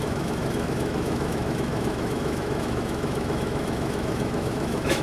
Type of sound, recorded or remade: remade